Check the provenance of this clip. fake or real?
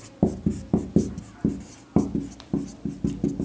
real